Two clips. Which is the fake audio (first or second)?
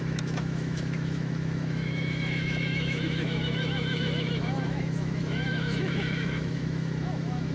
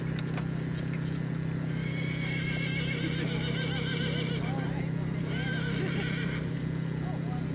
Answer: first